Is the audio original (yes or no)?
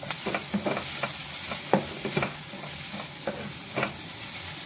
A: yes